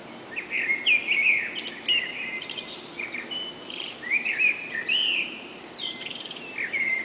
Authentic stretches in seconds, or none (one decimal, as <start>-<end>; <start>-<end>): 0.0-2.3; 6.5-7.0